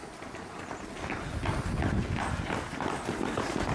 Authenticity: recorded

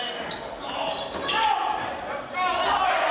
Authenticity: recorded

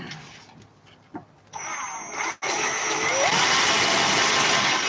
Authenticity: recorded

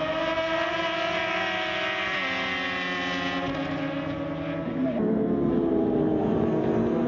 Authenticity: recorded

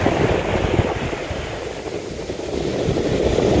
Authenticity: recorded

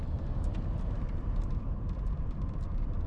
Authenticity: remade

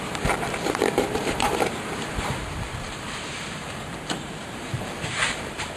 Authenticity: remade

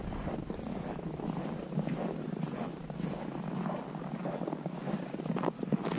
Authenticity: recorded